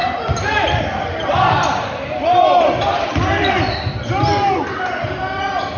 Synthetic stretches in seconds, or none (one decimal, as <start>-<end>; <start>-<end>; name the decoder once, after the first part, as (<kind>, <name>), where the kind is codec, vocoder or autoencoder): 0.0-3.5 (vocoder, BigVGAN v2)